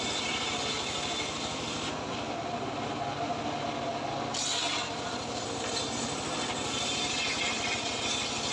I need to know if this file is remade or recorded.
recorded